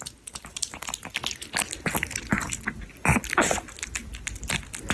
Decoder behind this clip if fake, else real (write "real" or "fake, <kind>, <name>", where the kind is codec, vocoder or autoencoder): real